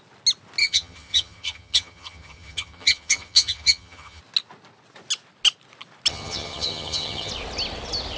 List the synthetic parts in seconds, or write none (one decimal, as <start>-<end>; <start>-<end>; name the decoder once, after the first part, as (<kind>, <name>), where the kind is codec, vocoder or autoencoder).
0.6-4.2 (vocoder, HiFi-GAN); 6.1-7.3